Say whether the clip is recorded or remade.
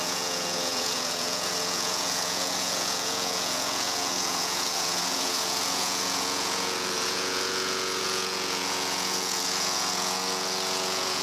remade